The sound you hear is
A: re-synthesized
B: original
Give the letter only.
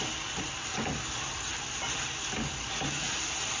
B